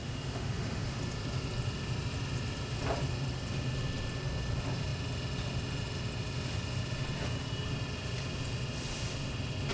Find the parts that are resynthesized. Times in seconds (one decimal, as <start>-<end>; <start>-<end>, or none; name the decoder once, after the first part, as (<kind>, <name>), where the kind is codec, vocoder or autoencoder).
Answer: 0.0-1.0 (autoencoder, DAC-VAE)

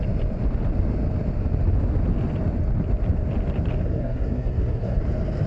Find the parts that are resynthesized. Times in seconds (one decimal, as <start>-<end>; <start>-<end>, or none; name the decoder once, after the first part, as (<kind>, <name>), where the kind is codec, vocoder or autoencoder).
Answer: 3.8-5.0 (codec, SNAC)